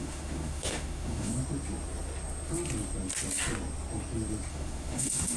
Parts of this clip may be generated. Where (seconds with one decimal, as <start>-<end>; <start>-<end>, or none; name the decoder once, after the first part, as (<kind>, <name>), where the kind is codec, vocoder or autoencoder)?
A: 0.0-1.3 (autoencoder, DAC-VAE); 4.5-5.4